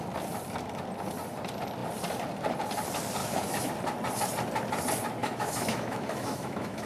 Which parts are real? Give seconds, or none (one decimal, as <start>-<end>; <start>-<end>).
0.0-3.2; 3.7-5.2